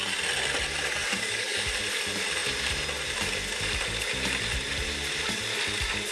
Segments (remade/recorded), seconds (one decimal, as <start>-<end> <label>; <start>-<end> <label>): 0.0-1.0 recorded; 1.0-1.8 remade; 1.8-6.1 recorded